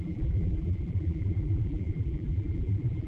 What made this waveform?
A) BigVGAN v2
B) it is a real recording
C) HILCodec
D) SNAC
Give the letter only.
A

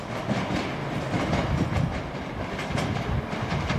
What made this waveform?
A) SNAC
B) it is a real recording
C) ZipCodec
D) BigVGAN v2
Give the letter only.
B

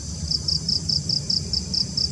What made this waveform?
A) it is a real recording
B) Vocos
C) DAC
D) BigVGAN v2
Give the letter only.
D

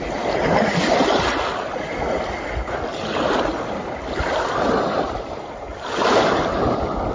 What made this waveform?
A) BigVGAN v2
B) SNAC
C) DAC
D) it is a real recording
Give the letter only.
D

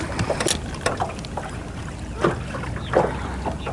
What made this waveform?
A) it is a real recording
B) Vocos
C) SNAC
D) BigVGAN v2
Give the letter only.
A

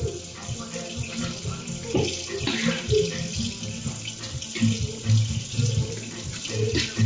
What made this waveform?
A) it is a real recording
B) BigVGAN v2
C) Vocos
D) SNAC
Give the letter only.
A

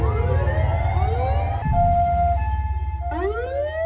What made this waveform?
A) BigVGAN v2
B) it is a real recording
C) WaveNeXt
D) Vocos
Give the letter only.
B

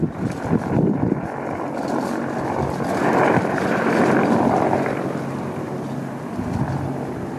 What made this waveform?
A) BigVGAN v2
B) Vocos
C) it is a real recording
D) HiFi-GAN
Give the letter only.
C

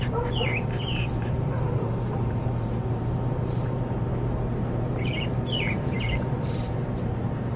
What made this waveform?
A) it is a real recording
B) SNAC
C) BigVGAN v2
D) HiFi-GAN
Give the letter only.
C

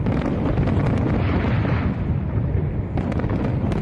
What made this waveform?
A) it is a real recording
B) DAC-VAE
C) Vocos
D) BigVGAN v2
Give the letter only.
A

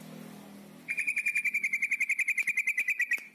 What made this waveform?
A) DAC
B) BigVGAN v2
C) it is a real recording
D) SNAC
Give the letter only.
C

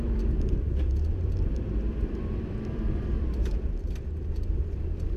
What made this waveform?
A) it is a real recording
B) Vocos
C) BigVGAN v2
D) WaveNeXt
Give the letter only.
C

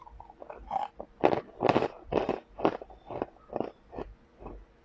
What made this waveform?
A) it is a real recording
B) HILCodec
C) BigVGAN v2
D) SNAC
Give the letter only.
C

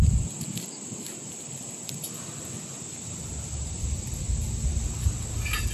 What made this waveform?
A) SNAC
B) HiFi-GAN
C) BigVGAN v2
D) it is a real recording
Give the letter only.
D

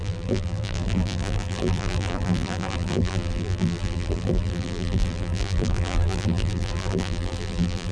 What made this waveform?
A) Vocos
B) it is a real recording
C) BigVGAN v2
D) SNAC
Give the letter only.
C